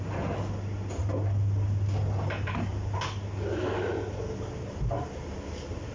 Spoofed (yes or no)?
no